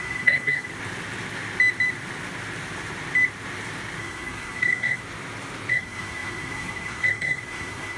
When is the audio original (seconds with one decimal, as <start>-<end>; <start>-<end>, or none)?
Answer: 0.7-4.0; 5.0-5.7